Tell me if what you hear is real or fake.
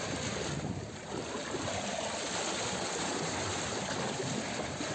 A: real